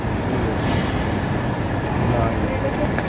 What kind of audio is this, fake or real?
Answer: real